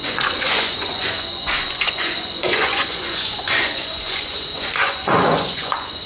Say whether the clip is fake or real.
fake